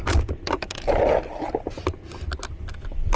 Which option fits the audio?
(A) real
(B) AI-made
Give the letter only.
A